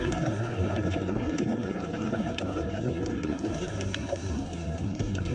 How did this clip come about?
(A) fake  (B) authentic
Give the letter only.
A